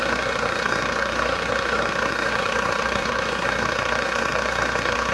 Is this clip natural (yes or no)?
no